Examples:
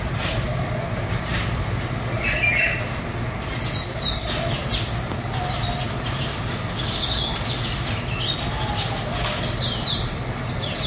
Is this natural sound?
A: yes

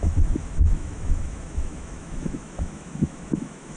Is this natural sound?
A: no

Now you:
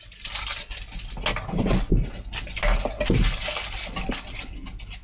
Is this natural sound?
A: yes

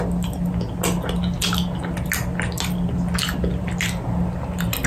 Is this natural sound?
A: yes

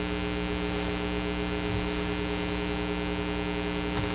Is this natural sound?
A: yes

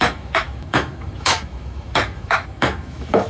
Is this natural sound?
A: no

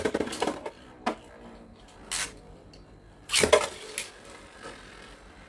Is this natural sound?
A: yes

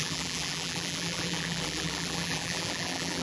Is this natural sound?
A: no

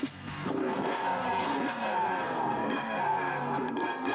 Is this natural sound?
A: no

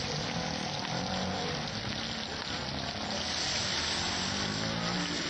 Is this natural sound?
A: yes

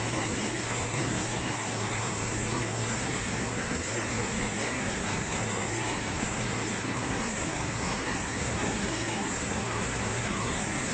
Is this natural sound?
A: no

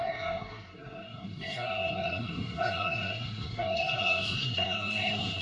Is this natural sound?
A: no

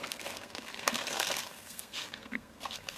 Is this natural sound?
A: no